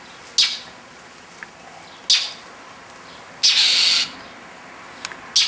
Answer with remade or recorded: recorded